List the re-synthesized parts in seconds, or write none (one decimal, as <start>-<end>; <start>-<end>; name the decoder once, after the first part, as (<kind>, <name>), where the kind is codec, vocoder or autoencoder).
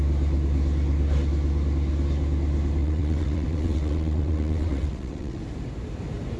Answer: 2.8-5.4 (vocoder, WaveNeXt)